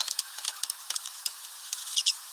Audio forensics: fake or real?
fake